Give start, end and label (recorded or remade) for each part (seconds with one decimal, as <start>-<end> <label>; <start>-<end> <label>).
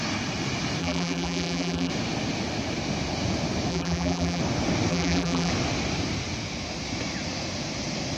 0.0-0.8 recorded; 0.8-1.9 remade; 1.9-3.7 recorded; 3.7-4.4 remade; 4.4-4.9 recorded; 4.9-5.5 remade; 5.5-8.2 recorded